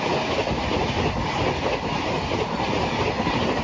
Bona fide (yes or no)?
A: yes